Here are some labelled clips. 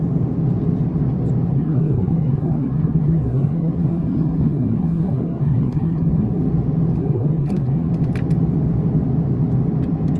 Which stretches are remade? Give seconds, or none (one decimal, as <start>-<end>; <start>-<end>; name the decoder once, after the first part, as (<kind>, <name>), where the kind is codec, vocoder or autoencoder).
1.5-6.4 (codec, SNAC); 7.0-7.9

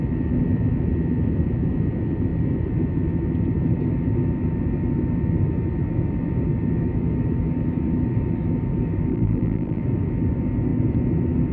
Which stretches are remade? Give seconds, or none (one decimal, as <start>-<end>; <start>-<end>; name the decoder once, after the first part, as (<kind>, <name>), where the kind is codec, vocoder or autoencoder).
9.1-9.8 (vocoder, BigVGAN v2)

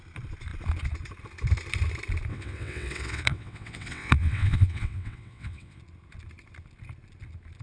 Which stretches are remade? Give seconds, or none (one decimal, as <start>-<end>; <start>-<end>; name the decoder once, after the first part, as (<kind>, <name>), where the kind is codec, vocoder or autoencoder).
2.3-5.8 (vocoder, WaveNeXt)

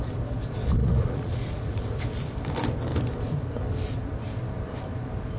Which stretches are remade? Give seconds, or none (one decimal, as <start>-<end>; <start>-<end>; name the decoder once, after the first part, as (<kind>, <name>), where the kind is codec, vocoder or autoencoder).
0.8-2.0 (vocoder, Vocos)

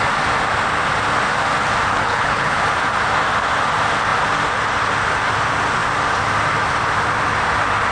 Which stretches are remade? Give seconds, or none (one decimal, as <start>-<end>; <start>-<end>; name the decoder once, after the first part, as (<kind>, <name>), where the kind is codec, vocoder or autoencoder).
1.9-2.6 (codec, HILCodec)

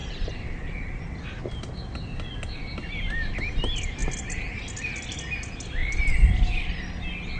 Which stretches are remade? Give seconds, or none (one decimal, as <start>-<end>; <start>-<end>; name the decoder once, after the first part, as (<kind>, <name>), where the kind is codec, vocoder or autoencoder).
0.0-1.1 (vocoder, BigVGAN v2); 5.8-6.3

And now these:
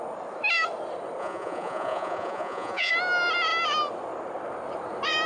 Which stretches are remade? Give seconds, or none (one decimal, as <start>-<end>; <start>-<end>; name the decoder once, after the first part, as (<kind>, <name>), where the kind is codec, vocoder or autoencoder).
1.2-2.9 (vocoder, Vocos)

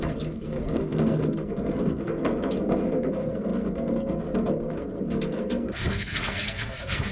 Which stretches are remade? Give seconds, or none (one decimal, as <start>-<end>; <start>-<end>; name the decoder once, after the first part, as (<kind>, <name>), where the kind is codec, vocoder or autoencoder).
0.0-7.1 (codec, SNAC)